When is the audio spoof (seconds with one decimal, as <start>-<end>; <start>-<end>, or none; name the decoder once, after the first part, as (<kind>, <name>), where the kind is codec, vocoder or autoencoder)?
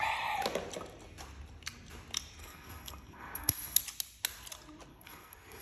2.4-3.8 (codec, SNAC); 4.9-5.6